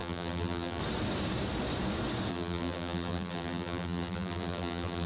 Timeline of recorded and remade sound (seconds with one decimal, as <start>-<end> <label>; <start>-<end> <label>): 0.0-0.8 remade; 0.8-2.3 recorded; 2.3-5.1 remade